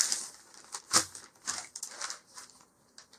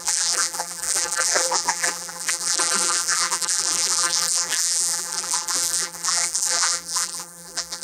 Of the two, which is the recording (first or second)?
first